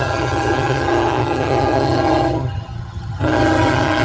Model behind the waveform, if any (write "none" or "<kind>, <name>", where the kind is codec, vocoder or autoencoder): vocoder, HiFi-GAN